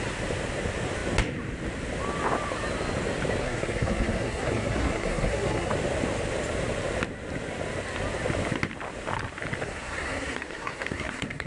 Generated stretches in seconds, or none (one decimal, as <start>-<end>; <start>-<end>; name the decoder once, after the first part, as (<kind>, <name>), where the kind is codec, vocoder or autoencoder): 3.4-5.7 (codec, SNAC); 9.6-11.5